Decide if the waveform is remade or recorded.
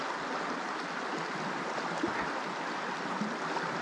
recorded